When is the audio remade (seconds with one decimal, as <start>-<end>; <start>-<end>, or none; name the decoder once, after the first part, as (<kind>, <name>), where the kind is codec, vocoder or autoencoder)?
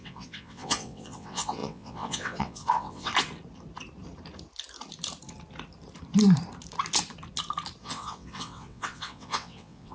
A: 0.0-3.1 (vocoder, WaveNeXt); 7.8-9.9